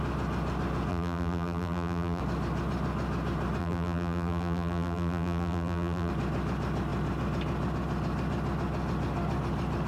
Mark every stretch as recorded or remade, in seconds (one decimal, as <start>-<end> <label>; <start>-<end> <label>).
0.0-0.9 recorded; 0.9-2.2 remade; 2.2-3.6 recorded; 3.6-6.1 remade; 6.1-9.9 recorded